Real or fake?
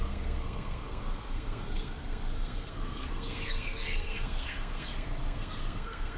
fake